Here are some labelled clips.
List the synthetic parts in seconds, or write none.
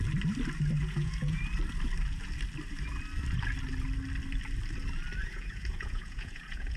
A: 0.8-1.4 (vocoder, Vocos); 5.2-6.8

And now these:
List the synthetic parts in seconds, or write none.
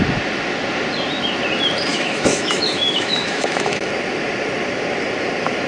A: 1.9-3.9 (autoencoder, DAC-VAE)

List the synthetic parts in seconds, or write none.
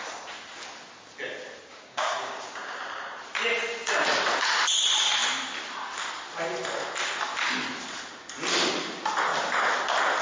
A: 1.7-2.8 (codec, DAC)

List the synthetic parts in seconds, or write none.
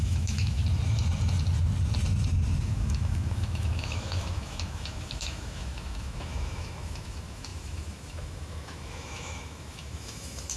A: 0.0-0.6 (autoencoder, DAC-VAE); 2.6-10.6